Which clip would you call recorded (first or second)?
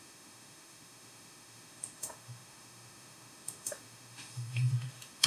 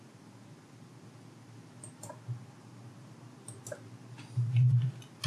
second